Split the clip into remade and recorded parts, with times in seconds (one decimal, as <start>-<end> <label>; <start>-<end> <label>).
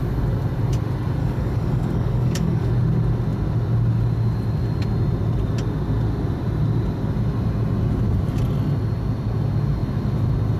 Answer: 0.0-1.2 recorded; 1.2-2.7 remade; 2.7-10.6 recorded